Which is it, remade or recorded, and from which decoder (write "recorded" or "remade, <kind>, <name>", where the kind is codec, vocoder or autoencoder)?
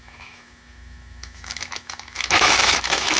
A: remade, autoencoder, DAC-VAE